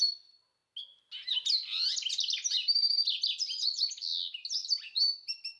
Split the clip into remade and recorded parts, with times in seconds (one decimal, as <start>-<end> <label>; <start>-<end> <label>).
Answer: 0.0-5.6 recorded